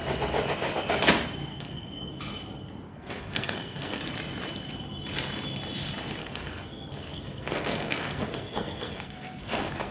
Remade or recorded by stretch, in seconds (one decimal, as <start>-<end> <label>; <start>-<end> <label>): 0.0-1.5 recorded; 1.5-2.1 remade; 2.1-2.9 recorded; 2.9-4.0 remade; 4.0-6.2 recorded; 6.2-9.9 remade